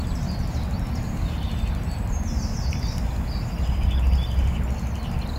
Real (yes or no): yes